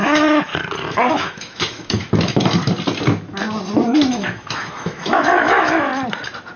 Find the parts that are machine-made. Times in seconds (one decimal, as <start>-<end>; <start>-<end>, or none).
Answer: 0.0-0.5; 1.1-2.6; 4.1-5.9